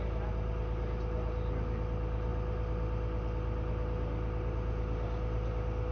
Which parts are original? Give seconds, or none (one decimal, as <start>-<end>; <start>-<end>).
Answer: 0.0-5.9